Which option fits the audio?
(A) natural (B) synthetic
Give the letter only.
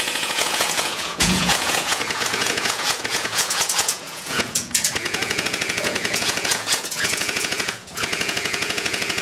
B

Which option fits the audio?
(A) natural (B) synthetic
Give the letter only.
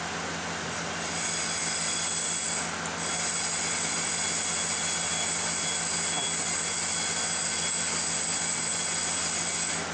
A